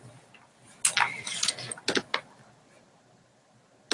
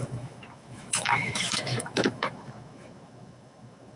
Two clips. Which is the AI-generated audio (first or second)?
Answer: second